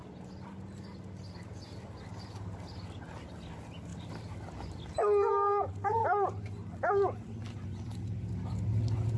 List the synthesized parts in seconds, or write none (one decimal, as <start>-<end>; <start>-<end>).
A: none